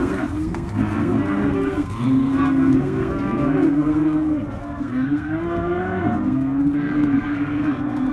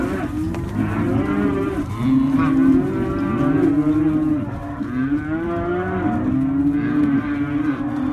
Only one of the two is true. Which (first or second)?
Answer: second